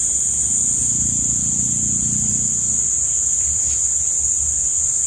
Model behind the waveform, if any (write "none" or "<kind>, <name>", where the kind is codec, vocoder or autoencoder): none